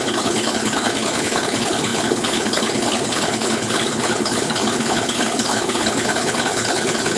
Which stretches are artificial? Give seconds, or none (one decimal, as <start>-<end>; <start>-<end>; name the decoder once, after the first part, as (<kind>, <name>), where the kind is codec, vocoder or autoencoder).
0.0-7.2 (codec, HILCodec)